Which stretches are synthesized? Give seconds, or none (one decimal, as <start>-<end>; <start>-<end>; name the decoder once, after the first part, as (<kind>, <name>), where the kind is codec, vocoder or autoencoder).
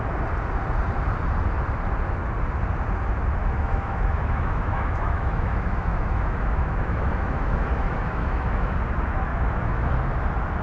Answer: 3.4-8.7 (autoencoder, DAC-VAE); 9.3-10.0